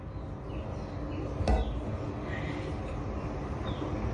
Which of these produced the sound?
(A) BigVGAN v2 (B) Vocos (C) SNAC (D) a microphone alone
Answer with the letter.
D